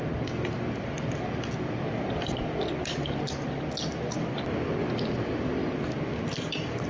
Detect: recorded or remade recorded